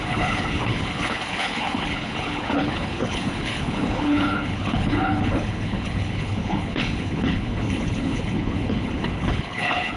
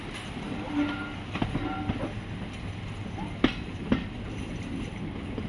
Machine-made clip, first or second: first